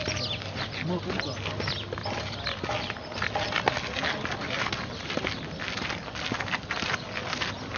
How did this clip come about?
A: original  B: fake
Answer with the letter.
A